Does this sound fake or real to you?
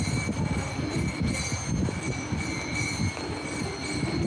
real